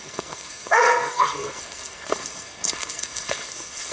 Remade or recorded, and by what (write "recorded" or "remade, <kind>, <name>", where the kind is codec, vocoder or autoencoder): remade, codec, SNAC